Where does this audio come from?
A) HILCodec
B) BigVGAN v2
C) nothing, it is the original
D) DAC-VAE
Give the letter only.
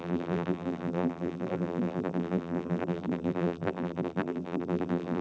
B